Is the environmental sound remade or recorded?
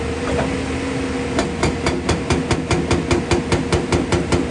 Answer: recorded